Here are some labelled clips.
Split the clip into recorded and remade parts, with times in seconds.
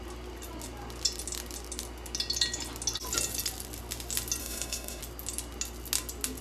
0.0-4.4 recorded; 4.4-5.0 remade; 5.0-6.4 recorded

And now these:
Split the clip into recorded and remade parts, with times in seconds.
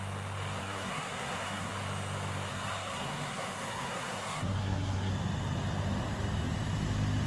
0.0-0.6 recorded; 0.6-1.7 remade; 1.7-2.5 recorded; 2.5-5.1 remade; 5.1-7.3 recorded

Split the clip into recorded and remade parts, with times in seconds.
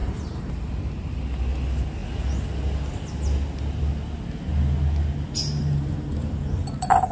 0.0-0.7 remade; 0.7-5.6 recorded; 5.6-7.1 remade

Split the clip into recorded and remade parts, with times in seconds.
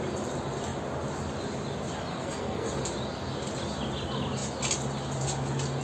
0.0-2.1 recorded; 2.1-2.7 remade; 2.7-5.8 recorded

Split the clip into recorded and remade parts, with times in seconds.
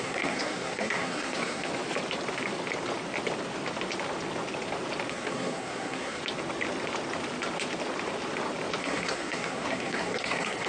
0.0-1.7 remade; 1.7-5.1 recorded; 5.1-6.2 remade; 6.2-8.8 recorded; 8.8-10.7 remade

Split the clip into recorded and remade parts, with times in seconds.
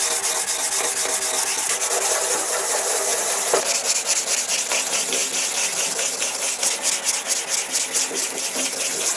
0.0-9.2 recorded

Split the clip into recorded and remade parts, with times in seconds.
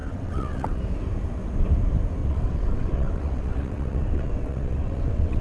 0.0-0.8 remade; 0.8-2.2 recorded; 2.2-5.4 remade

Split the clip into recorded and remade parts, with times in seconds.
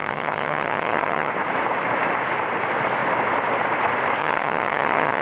0.0-1.3 remade; 1.3-4.2 recorded; 4.2-5.2 remade